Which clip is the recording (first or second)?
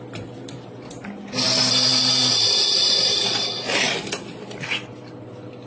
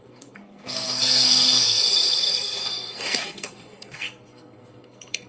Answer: first